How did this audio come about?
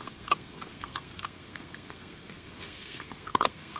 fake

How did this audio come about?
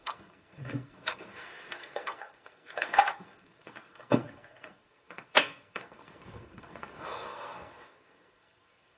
fake